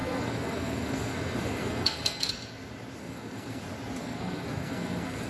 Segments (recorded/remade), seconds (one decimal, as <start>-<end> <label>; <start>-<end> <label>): 0.0-2.3 remade; 2.3-3.0 recorded; 3.0-3.6 remade; 3.6-4.0 recorded; 4.0-5.3 remade